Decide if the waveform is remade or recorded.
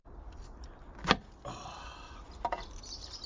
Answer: recorded